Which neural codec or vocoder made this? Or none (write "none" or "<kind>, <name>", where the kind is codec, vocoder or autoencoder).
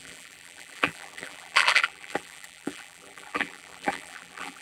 vocoder, BigVGAN v2